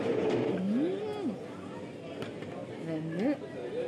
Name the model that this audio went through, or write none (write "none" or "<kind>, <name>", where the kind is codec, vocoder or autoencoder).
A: none